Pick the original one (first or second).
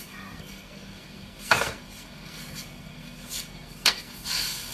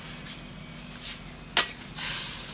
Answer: second